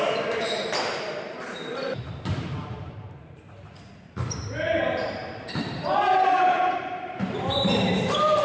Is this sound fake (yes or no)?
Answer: yes